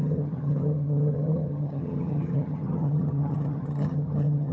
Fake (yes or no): yes